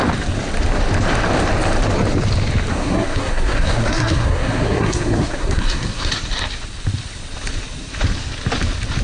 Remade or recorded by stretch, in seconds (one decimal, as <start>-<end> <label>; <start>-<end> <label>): 0.0-2.7 recorded; 2.7-6.1 remade; 6.1-9.0 recorded